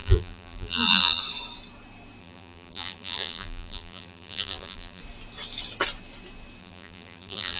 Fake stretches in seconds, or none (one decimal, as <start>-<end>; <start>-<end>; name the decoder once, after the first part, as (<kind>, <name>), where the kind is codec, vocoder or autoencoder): 0.0-1.2 (vocoder, BigVGAN v2); 2.2-5.0; 6.6-7.6